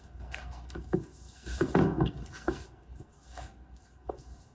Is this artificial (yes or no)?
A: yes